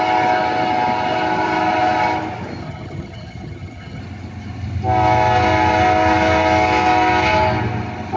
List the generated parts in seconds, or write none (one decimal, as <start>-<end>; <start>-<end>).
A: 2.6-4.0